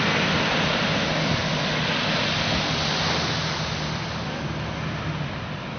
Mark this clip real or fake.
real